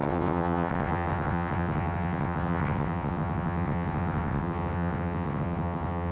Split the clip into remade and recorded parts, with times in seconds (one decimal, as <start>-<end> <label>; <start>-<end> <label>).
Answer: 0.0-6.1 remade